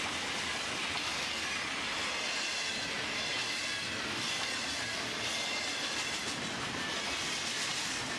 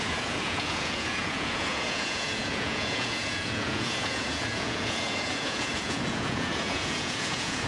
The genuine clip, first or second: first